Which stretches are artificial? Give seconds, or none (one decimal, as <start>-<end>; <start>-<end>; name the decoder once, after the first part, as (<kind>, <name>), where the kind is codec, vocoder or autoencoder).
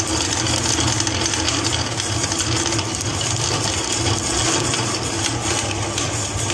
none